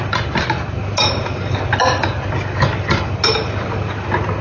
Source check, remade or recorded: recorded